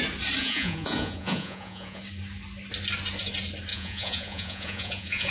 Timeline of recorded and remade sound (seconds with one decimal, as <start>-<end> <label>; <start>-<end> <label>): 0.0-0.4 recorded; 0.4-2.0 remade; 2.0-3.7 recorded; 3.7-5.3 remade